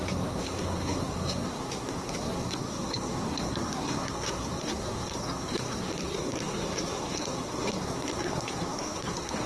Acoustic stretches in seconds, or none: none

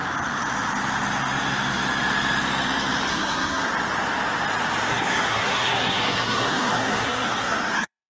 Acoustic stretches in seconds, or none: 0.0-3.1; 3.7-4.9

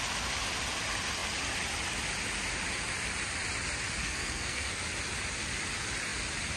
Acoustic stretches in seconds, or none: 0.0-4.0; 4.8-6.6